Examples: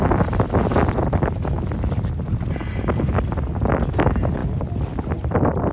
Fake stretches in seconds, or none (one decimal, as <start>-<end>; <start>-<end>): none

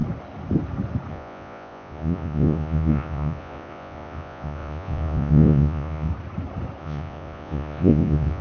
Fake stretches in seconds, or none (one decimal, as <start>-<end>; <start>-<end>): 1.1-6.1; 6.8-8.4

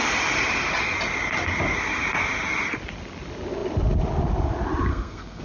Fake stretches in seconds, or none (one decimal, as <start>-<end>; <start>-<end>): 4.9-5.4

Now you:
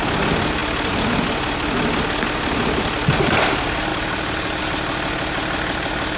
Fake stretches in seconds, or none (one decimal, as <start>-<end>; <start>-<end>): none

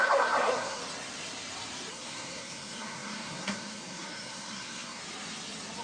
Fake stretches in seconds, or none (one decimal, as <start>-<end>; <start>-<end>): 0.0-0.8; 1.9-5.0